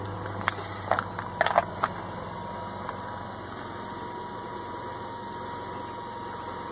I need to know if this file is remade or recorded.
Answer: recorded